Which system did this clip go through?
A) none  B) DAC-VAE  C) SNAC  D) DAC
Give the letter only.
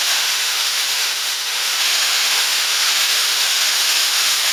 B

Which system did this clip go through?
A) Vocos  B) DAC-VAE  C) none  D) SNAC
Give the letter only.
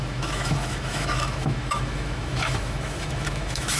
B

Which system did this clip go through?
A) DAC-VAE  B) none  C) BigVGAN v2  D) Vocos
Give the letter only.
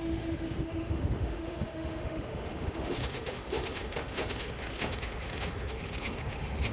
A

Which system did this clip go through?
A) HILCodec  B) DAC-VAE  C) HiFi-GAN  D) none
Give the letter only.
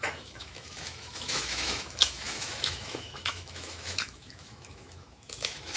B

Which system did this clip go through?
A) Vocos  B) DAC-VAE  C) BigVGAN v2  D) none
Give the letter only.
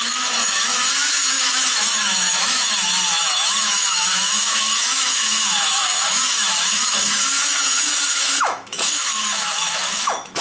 B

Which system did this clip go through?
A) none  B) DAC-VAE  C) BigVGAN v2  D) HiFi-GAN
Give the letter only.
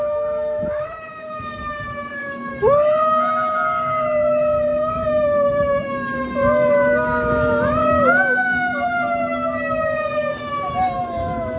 B